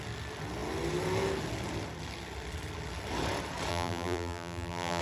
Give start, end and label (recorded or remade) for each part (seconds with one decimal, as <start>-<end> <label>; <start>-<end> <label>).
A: 0.0-3.7 recorded; 3.7-5.0 remade